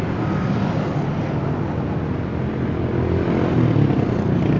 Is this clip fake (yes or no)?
no